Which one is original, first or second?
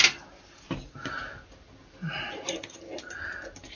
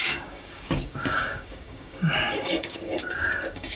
first